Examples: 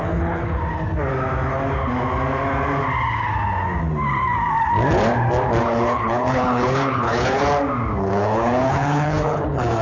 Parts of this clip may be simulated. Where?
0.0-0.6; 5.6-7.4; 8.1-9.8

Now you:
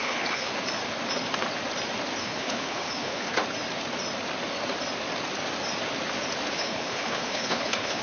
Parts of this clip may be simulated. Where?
0.0-0.5; 2.2-3.3; 6.5-8.0

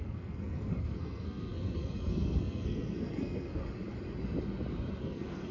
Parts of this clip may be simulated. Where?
0.0-3.6; 5.0-5.5

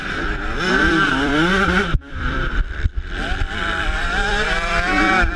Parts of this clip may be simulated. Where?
0.0-1.5; 2.1-2.9; 4.3-5.4

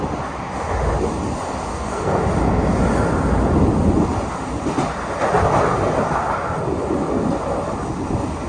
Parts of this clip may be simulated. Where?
1.7-2.2

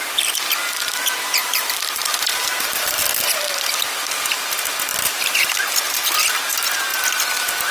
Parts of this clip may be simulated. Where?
1.4-3.0; 4.9-5.5

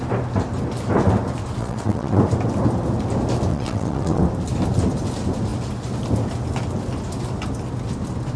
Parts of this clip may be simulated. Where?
1.6-2.2; 3.5-4.2